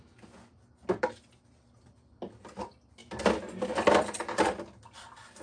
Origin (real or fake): real